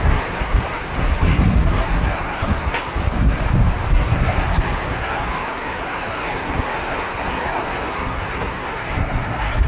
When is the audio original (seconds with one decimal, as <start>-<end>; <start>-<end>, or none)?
3.4-3.9